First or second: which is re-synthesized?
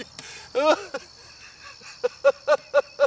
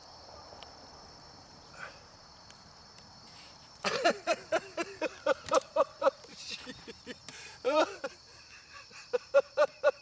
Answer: second